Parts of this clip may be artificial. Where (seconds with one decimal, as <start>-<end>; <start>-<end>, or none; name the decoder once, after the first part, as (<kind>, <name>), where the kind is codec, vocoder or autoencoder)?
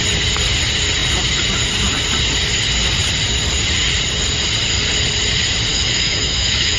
5.7-6.8 (autoencoder, DAC-VAE)